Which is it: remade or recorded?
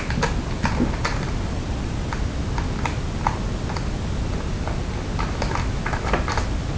recorded